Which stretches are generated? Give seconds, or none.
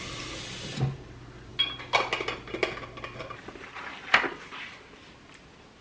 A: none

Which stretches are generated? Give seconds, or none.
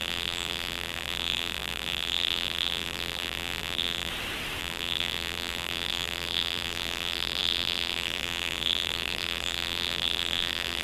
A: 0.0-4.1 (vocoder, BigVGAN v2); 4.6-10.8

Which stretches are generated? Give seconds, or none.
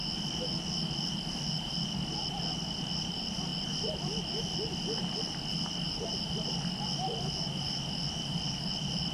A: none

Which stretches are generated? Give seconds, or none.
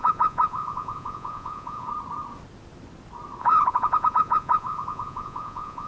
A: 0.0-1.9 (vocoder, Vocos); 3.4-5.9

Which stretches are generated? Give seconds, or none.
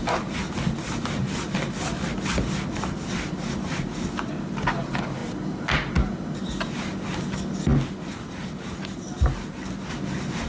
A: none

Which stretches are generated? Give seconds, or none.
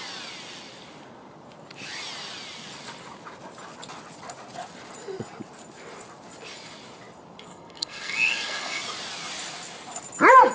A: 7.5-8.8 (codec, SNAC)